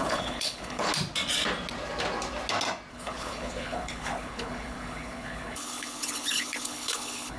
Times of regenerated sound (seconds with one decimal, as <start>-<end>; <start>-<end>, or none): 0.0-0.9; 2.9-7.4